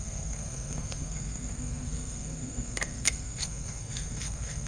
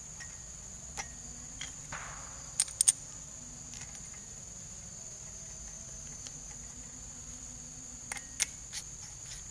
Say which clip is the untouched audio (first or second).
second